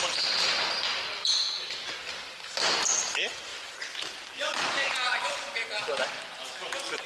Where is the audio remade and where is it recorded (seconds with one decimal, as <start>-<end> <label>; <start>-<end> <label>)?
0.0-7.1 recorded